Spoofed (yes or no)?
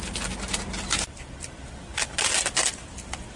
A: no